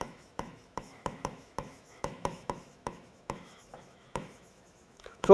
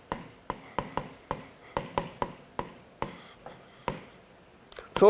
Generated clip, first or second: first